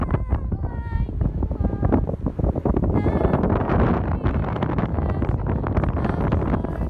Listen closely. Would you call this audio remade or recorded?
recorded